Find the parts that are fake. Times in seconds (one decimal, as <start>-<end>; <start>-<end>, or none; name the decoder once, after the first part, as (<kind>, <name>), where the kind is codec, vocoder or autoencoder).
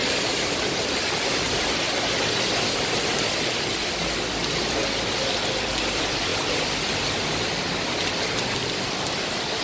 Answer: none